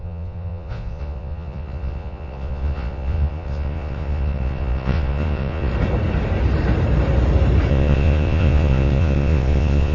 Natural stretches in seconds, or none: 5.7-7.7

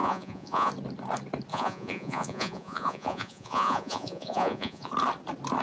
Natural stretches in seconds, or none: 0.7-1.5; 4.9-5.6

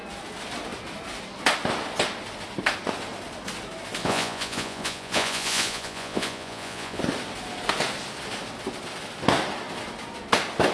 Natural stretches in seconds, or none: 0.0-4.0; 7.0-10.7

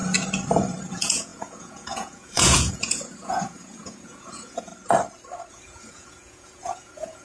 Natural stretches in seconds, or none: 0.0-0.9; 4.7-5.5

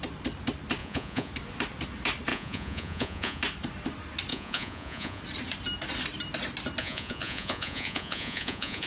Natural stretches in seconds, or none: 0.0-0.8; 1.3-2.3; 3.4-4.3; 5.2-6.8

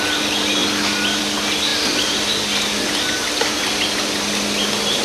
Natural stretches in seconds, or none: 0.0-5.0